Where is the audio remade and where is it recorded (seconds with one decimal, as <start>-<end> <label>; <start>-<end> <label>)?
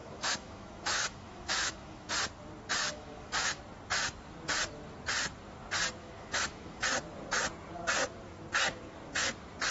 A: 0.0-2.1 remade; 2.1-2.8 recorded; 2.8-3.6 remade; 3.6-6.0 recorded; 6.0-6.8 remade; 6.8-9.7 recorded